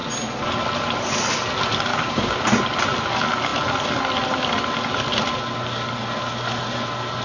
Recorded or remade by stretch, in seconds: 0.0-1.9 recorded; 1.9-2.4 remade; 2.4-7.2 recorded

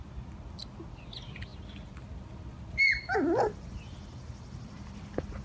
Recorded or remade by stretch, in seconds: 0.0-5.4 recorded

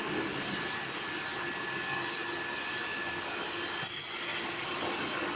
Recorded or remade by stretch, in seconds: 0.0-5.4 recorded

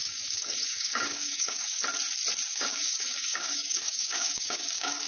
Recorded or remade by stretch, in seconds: 0.0-1.8 remade; 1.8-2.5 recorded; 2.5-5.1 remade